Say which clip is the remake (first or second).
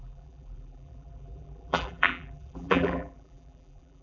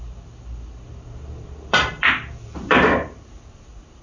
first